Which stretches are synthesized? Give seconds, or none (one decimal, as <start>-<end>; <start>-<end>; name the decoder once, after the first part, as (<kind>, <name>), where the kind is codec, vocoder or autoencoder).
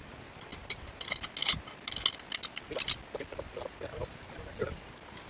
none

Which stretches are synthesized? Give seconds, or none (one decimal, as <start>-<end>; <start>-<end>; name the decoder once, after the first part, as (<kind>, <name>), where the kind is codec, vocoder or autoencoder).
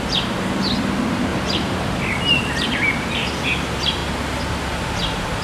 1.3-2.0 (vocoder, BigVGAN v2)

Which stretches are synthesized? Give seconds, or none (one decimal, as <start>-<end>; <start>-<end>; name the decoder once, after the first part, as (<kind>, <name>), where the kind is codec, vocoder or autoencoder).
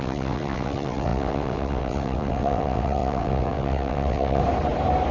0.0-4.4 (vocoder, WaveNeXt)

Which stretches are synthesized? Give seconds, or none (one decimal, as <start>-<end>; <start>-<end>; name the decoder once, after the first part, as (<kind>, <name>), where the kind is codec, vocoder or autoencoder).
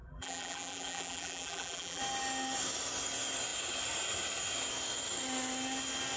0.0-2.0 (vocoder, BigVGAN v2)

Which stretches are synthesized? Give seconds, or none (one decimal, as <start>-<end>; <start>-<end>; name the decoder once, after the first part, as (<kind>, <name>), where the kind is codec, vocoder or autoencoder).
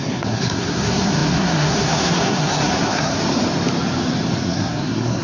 0.0-3.2 (codec, SNAC); 4.4-5.2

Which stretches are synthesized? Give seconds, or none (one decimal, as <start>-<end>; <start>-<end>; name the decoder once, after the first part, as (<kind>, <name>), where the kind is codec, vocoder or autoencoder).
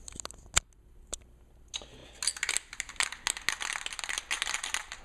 none